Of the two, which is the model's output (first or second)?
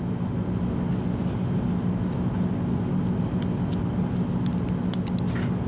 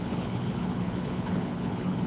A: second